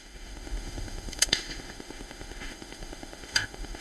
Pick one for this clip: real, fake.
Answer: fake